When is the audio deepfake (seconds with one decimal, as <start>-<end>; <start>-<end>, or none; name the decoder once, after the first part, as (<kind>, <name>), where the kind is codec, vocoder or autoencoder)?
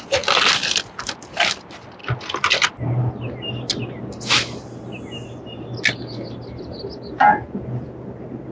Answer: none